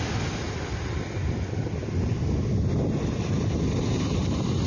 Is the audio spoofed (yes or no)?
no